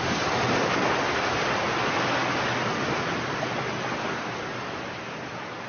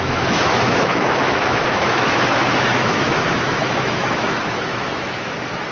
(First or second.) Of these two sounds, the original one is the first